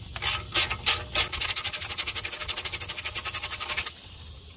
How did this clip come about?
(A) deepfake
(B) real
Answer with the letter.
B